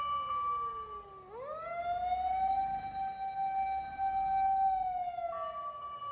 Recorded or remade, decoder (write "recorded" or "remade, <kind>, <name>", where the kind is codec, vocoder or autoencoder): recorded